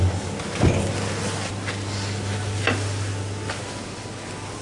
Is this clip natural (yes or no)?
yes